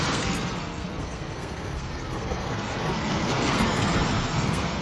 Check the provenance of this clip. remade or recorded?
remade